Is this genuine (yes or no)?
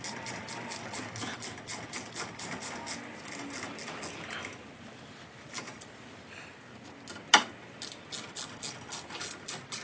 yes